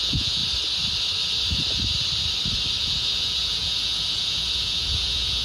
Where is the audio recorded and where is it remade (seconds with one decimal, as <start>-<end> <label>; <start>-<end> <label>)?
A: 0.0-0.4 remade; 0.4-2.8 recorded; 2.8-5.4 remade

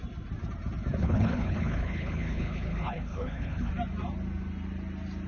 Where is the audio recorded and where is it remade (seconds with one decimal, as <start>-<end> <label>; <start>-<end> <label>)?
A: 0.0-1.0 recorded; 1.0-3.7 remade; 3.7-5.3 recorded

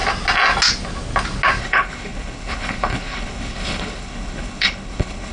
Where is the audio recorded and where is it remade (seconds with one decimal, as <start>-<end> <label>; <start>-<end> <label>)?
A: 0.0-1.6 recorded; 1.6-5.3 remade